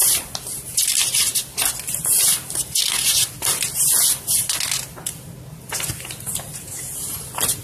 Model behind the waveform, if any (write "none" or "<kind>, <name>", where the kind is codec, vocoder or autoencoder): none